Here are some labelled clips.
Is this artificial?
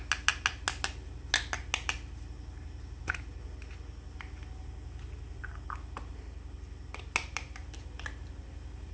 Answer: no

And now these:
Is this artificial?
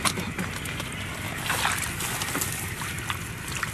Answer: no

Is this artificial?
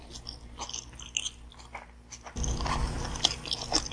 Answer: no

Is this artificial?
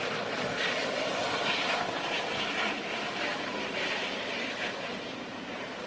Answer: yes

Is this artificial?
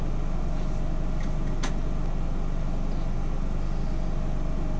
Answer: no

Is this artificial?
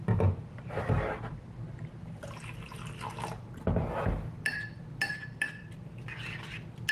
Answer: no